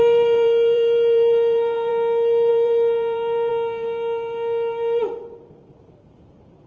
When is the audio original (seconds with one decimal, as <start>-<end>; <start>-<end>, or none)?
1.9-2.5; 3.5-5.0